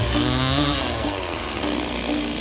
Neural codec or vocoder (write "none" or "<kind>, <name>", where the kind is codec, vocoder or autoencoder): codec, SNAC